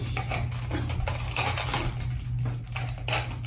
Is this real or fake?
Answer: real